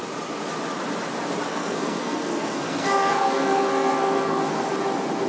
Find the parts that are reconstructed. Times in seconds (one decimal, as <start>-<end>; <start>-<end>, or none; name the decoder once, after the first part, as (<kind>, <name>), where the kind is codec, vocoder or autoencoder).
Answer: 1.5-4.7 (codec, SNAC)